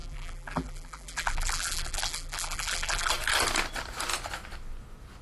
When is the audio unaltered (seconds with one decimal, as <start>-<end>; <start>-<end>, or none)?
3.1-5.2